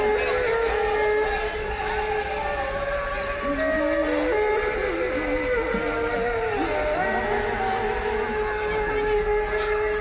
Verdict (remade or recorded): recorded